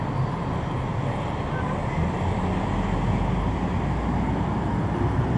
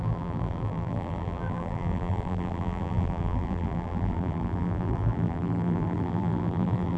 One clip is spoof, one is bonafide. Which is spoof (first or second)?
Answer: second